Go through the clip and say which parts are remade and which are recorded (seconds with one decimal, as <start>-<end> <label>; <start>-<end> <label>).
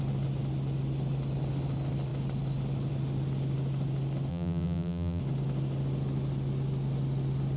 0.0-4.3 recorded; 4.3-5.2 remade; 5.2-7.6 recorded